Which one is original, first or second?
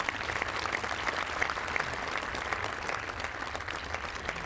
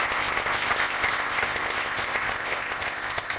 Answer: first